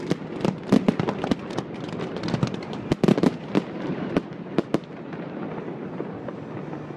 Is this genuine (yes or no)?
yes